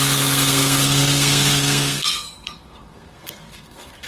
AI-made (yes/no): yes